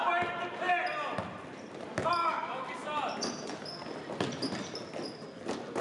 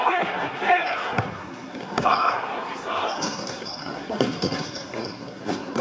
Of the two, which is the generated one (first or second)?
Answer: second